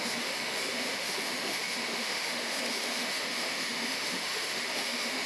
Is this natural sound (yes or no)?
no